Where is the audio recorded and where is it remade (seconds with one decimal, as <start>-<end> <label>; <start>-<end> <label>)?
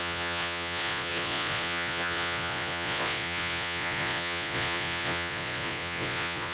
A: 0.0-6.5 remade